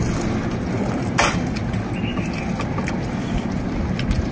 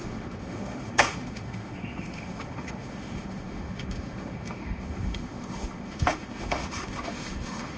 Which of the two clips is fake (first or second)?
second